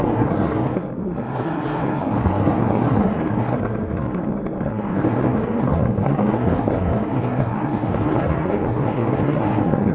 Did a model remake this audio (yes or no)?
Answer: yes